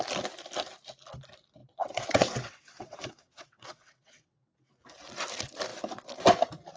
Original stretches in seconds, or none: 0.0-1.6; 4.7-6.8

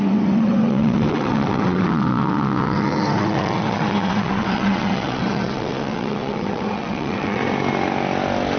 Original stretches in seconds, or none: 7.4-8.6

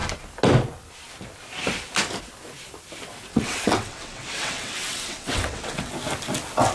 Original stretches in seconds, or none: 0.0-3.3; 5.9-6.7